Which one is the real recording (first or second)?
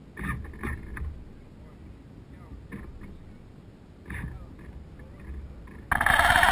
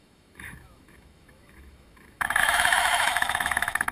first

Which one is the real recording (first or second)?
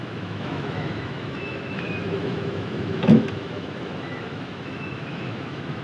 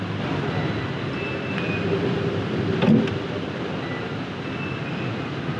second